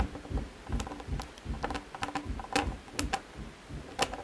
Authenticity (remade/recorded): recorded